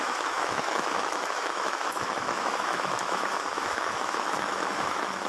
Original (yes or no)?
no